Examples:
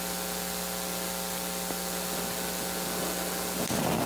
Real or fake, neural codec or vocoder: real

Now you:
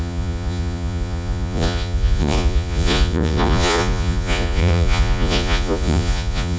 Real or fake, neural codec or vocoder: fake, vocoder, Vocos